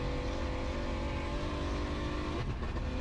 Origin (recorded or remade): recorded